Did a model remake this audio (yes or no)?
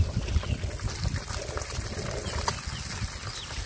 no